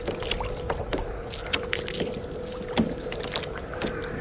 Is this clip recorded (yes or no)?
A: yes